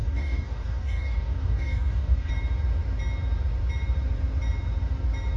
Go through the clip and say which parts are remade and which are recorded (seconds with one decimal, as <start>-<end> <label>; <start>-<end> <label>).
0.0-2.3 remade; 2.3-5.4 recorded